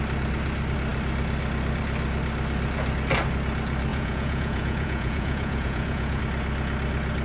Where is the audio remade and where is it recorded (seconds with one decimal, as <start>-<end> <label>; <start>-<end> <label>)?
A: 0.0-3.9 recorded; 3.9-6.2 remade; 6.2-7.2 recorded